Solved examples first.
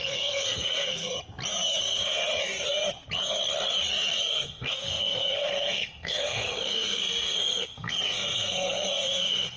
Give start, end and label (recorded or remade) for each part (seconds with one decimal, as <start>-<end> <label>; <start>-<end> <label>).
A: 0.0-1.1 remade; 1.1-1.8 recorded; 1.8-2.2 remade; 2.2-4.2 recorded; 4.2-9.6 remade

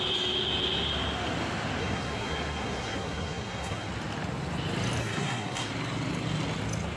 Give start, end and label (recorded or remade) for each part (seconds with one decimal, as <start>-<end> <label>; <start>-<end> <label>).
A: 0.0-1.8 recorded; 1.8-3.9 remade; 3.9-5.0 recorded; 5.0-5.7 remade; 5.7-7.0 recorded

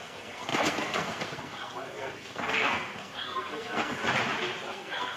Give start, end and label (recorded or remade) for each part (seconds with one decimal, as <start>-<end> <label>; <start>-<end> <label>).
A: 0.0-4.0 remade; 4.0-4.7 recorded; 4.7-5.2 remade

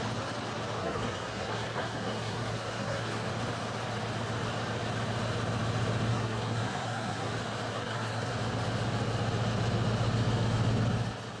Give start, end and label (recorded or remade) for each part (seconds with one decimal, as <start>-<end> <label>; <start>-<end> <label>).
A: 0.0-0.8 recorded; 0.8-3.3 remade; 3.3-6.1 recorded; 6.1-7.3 remade; 7.3-7.7 recorded; 7.7-8.3 remade; 8.3-11.4 recorded

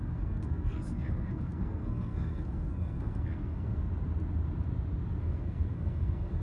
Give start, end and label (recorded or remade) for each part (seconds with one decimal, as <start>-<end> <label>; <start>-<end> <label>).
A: 0.0-3.9 remade; 3.9-5.2 recorded; 5.2-6.4 remade

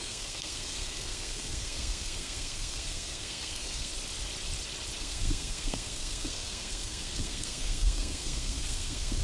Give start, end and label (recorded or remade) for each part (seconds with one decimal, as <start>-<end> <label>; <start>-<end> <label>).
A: 0.0-3.9 remade; 3.9-5.0 recorded; 5.0-9.2 remade

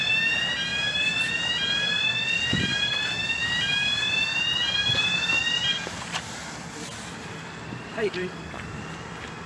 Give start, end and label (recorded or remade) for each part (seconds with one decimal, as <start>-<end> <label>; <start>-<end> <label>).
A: 0.0-9.5 recorded